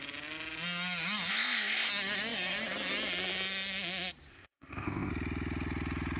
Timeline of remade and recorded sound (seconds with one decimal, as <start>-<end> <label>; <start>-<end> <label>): 0.0-1.3 recorded; 1.3-1.9 remade; 1.9-4.3 recorded; 4.3-5.1 remade; 5.1-6.2 recorded